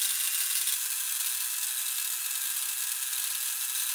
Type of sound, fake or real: real